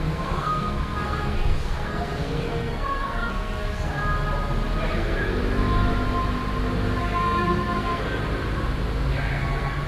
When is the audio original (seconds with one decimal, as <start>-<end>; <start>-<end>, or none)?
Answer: 4.0-4.9; 5.4-7.0; 8.2-9.1